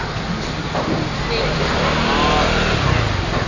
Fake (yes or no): no